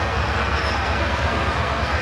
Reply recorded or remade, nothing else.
remade